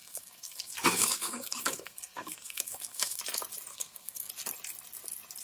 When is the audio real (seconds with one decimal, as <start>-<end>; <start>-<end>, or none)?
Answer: 3.2-3.7; 4.3-5.4